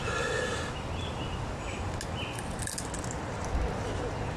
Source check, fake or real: real